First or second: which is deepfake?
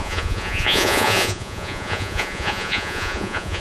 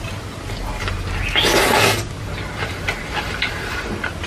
first